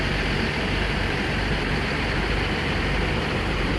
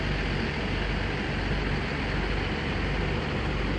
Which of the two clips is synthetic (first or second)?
first